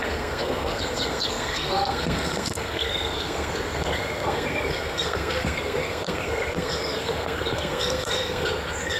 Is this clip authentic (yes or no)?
no